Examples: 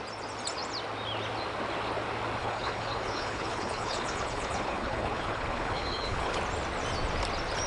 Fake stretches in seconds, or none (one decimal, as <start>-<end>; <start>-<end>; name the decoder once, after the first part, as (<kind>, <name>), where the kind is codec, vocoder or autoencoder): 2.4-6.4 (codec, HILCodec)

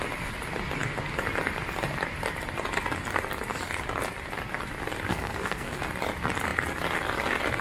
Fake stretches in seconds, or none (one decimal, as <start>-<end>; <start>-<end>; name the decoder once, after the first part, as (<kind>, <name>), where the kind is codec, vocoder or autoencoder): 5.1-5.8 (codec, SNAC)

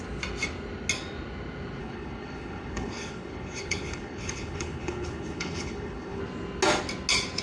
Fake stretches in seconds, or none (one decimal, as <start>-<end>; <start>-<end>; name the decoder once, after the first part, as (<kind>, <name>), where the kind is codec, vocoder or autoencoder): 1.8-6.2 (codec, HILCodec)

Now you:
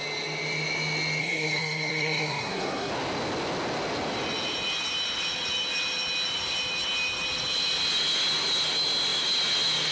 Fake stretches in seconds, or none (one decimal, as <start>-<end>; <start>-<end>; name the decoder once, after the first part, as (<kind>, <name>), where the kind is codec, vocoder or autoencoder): 1.2-2.9 (codec, SNAC)